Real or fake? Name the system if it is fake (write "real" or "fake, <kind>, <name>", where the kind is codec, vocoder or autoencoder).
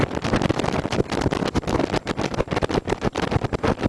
real